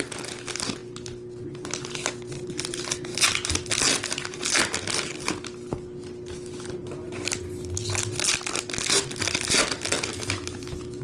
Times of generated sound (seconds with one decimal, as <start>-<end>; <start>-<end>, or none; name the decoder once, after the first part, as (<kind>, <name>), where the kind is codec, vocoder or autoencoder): 10.1-11.0 (autoencoder, DAC-VAE)